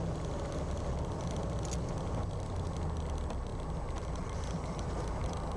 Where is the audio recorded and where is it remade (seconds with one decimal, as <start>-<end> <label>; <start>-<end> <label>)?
0.0-5.6 recorded